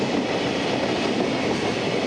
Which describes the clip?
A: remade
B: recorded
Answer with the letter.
B